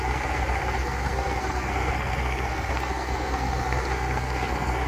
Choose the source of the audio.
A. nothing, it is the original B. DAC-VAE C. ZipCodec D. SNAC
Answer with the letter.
D